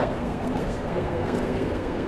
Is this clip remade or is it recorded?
remade